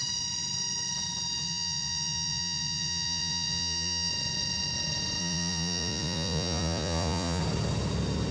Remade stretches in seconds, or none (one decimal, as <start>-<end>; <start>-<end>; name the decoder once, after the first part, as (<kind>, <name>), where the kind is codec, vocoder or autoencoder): 1.4-4.1 (vocoder, Vocos); 5.2-7.4